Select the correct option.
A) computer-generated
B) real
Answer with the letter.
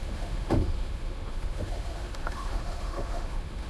A